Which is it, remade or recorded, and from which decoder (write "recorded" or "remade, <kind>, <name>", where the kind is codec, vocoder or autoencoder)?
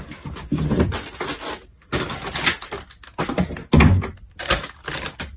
recorded